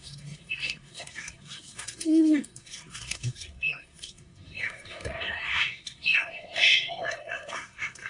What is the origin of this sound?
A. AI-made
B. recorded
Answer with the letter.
A